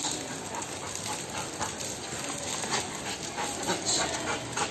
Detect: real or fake real